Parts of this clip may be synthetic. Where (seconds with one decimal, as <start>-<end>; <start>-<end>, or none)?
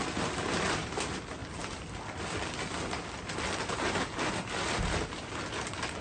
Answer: none